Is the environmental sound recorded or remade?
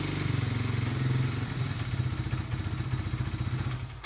recorded